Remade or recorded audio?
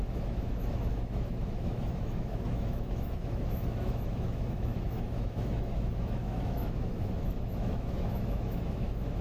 remade